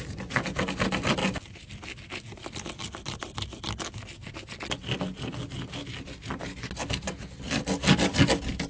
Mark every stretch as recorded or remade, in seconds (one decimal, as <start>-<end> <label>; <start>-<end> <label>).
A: 0.0-8.7 recorded